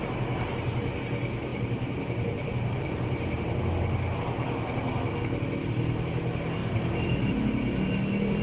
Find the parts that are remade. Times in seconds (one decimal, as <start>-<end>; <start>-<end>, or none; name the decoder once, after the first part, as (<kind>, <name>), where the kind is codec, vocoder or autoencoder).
1.5-3.6 (vocoder, BigVGAN v2); 6.6-7.3